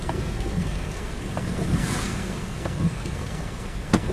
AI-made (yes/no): yes